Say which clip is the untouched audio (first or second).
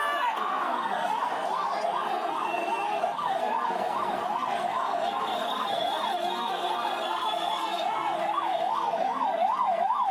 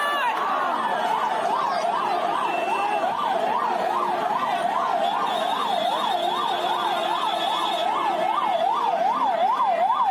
second